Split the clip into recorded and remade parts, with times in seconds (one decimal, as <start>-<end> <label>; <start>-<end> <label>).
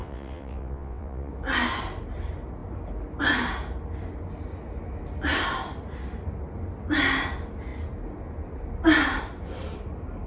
0.0-1.3 remade; 1.3-10.3 recorded